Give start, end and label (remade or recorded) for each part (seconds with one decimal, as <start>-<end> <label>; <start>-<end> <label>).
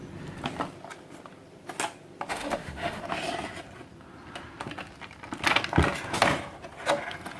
0.0-2.3 recorded; 2.3-3.0 remade; 3.0-7.4 recorded